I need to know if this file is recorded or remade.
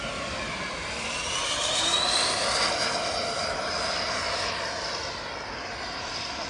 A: remade